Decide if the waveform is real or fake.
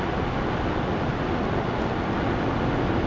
real